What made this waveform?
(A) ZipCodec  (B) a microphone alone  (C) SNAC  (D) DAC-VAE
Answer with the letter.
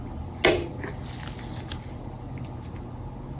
B